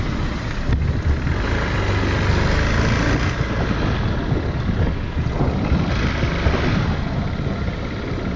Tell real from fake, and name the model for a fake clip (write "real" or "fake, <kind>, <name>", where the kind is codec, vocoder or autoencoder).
real